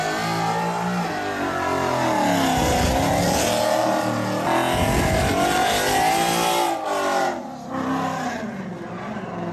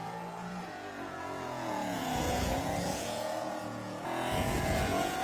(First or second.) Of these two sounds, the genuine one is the first